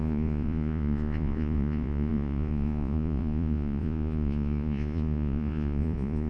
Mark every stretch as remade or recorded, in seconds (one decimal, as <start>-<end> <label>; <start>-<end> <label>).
0.0-6.3 remade